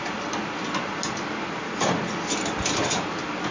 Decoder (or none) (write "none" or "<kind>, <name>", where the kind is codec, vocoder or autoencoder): none